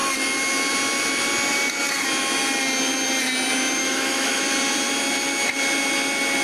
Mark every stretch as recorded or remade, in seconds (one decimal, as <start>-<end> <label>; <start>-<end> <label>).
0.0-3.8 recorded; 3.8-4.4 remade; 4.4-6.4 recorded